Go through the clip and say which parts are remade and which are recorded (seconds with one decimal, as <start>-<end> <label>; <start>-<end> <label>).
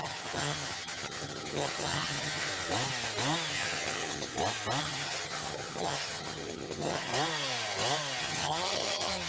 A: 0.0-2.5 remade; 2.5-3.5 recorded; 3.5-4.3 remade; 4.3-4.8 recorded; 4.8-7.1 remade; 7.1-8.2 recorded; 8.2-9.3 remade